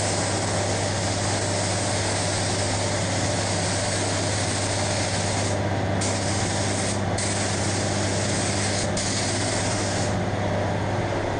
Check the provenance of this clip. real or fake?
real